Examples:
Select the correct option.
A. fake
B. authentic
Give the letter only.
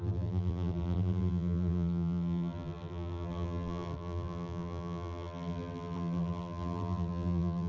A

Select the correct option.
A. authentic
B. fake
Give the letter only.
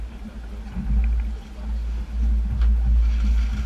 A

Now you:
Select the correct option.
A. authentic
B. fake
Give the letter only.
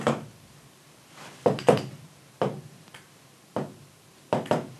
B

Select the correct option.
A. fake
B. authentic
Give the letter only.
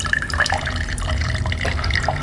A